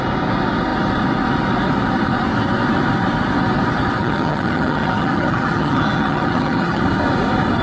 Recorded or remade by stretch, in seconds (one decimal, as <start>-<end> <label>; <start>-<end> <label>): 0.0-4.0 recorded; 4.0-6.8 remade; 6.8-7.6 recorded